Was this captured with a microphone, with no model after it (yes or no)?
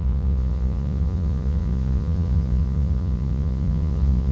no